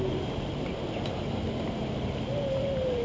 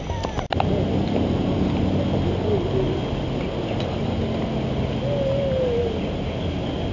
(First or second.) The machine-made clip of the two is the first